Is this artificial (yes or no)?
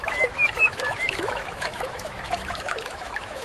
yes